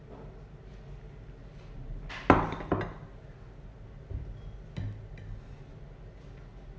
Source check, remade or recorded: recorded